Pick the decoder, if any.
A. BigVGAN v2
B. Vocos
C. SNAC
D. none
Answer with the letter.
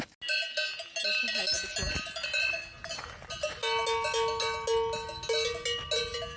D